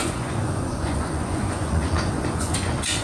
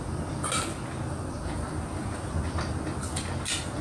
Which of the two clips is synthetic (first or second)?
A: first